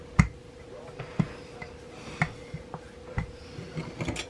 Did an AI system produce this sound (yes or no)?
no